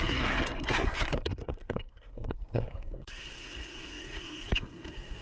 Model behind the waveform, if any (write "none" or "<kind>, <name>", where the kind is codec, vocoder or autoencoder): codec, SNAC